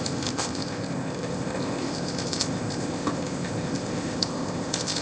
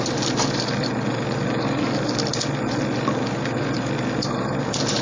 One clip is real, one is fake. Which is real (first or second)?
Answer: second